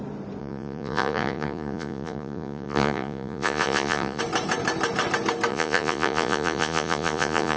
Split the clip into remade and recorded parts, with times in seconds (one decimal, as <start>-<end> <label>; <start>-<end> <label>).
0.0-0.4 recorded; 0.4-4.2 remade; 4.2-5.5 recorded; 5.5-7.6 remade